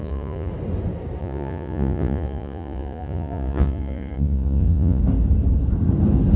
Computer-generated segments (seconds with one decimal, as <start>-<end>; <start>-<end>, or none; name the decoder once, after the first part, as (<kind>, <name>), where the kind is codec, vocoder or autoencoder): 0.0-0.5 (vocoder, Vocos); 1.2-5.0